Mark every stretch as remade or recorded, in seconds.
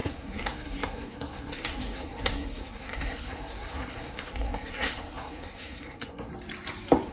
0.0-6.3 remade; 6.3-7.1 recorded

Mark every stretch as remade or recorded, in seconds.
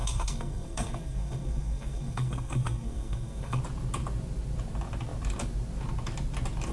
0.0-3.6 remade; 3.6-6.7 recorded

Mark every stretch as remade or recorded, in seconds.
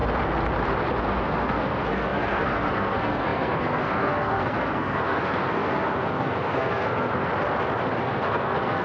0.0-1.0 recorded; 1.0-7.3 remade; 7.3-8.0 recorded; 8.0-8.8 remade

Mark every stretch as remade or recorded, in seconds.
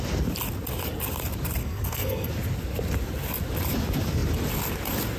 0.0-1.6 recorded; 1.6-2.3 remade; 2.3-5.2 recorded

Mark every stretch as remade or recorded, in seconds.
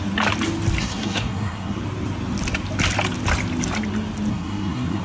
0.0-0.8 recorded; 0.8-1.8 remade; 1.8-4.3 recorded; 4.3-5.0 remade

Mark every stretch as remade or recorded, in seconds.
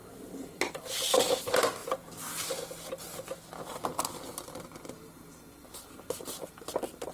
0.0-7.1 recorded